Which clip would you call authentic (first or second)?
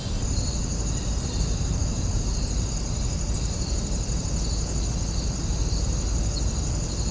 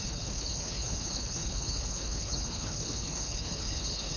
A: first